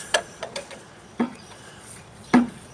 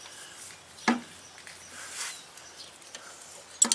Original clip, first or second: second